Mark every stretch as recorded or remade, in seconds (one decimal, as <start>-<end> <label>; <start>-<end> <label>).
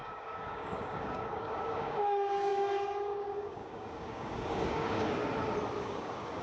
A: 0.0-5.2 remade; 5.2-5.8 recorded; 5.8-6.4 remade